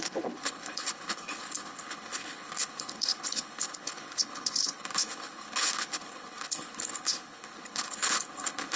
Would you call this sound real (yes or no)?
no